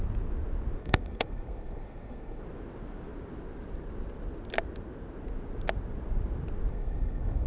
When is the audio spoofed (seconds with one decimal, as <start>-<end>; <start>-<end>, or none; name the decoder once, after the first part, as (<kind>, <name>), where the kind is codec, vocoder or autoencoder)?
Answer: 0.8-2.4 (codec, SNAC); 6.7-7.5